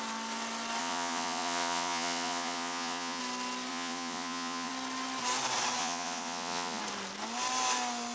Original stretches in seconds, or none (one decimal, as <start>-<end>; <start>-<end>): 0.0-0.8; 3.2-3.7; 4.7-5.8; 6.8-8.1